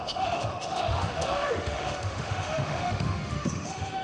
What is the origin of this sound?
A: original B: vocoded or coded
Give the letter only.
B